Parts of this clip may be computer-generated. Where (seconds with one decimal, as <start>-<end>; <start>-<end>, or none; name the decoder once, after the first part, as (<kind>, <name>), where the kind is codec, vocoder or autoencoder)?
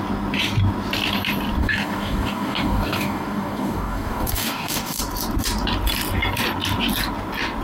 1.6-5.0 (codec, DAC)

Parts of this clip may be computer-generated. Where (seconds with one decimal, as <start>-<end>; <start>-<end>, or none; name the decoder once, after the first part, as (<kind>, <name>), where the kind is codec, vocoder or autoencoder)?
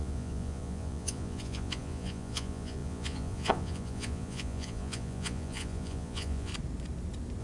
0.0-6.5 (vocoder, Vocos)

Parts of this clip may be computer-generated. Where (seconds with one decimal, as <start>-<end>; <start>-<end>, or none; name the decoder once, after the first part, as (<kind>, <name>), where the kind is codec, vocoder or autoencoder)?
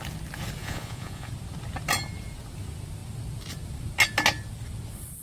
0.6-1.3 (vocoder, Vocos)